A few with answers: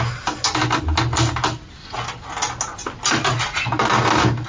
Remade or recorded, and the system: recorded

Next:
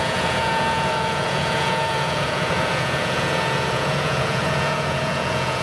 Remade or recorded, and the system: remade, vocoder, Vocos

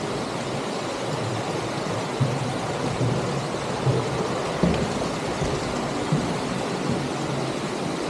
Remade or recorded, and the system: recorded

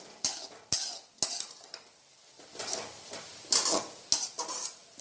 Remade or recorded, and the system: recorded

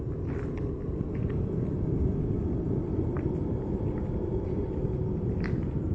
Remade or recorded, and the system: recorded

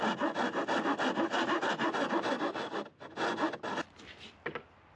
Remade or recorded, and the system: recorded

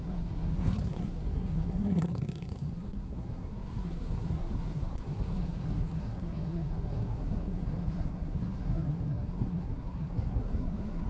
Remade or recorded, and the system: remade, codec, SNAC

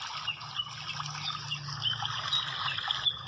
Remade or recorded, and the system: recorded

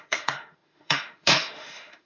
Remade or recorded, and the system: remade, autoencoder, DAC-VAE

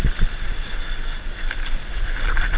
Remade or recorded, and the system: recorded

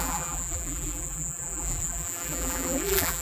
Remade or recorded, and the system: remade, vocoder, BigVGAN v2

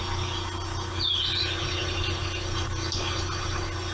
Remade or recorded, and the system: recorded